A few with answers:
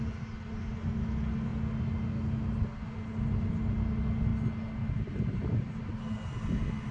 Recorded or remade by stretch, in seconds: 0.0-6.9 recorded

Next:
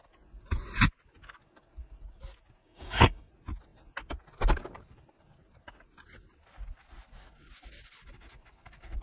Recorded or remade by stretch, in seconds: 0.0-2.6 recorded; 2.6-3.3 remade; 3.3-9.0 recorded

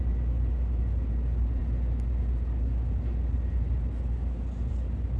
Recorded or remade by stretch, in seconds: 0.0-5.2 recorded

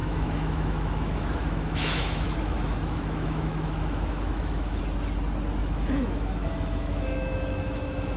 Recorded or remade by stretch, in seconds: 0.0-4.8 remade; 4.8-5.6 recorded; 5.6-8.2 remade

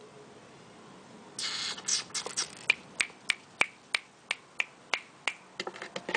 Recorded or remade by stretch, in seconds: 0.0-6.2 recorded

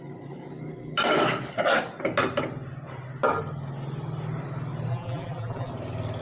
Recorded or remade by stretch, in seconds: 0.0-4.9 recorded; 4.9-5.7 remade; 5.7-6.2 recorded